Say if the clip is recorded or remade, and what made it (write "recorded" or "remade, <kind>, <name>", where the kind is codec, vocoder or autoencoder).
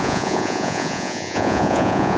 remade, vocoder, Vocos